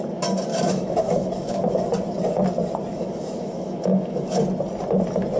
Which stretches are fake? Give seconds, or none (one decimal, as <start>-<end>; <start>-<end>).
0.5-1.8; 2.9-4.4